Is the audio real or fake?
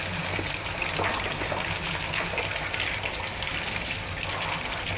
real